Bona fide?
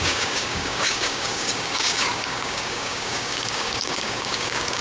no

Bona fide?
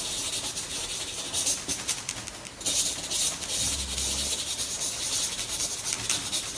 yes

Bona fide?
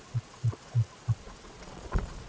no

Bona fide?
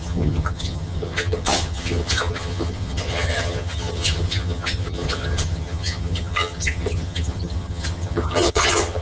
no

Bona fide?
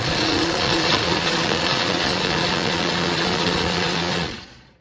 no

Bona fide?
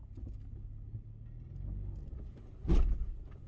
yes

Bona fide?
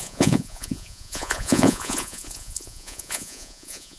no